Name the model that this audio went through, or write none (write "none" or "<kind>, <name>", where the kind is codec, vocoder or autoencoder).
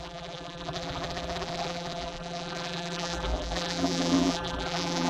vocoder, BigVGAN v2